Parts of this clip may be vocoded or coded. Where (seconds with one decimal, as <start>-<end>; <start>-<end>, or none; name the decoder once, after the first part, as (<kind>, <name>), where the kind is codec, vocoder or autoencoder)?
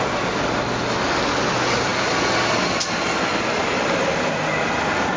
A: none